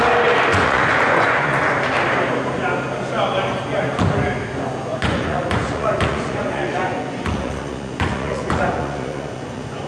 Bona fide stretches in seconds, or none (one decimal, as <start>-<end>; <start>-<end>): 0.0-0.5; 1.7-4.9